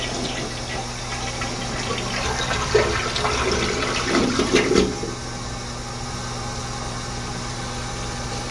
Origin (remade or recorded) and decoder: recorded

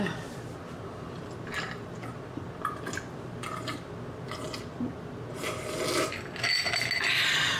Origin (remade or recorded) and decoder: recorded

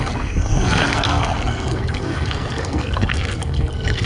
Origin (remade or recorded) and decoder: remade, codec, SNAC